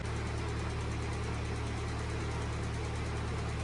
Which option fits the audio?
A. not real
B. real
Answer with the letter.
B